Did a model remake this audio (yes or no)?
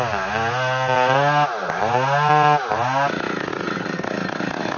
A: no